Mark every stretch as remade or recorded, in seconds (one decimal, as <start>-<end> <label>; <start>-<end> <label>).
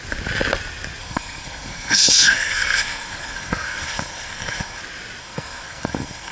0.0-1.0 recorded; 1.0-4.8 remade; 4.8-5.2 recorded; 5.2-6.3 remade